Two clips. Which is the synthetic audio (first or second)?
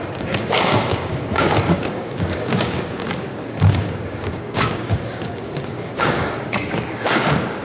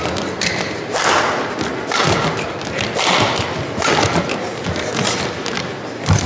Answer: first